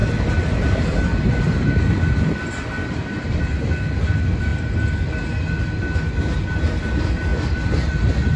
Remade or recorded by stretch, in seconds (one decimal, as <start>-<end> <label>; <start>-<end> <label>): 0.0-3.6 remade; 3.6-7.3 recorded; 7.3-8.4 remade